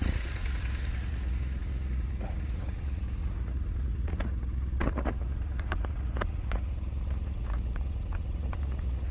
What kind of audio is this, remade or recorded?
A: remade